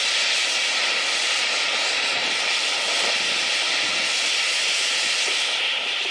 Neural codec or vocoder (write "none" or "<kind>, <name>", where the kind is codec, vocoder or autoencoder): none